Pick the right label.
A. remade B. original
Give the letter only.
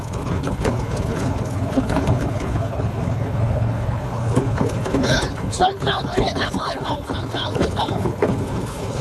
A